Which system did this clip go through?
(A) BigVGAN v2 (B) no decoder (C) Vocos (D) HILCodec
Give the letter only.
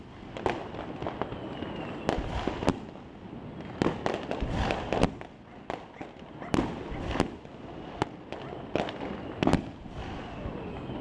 B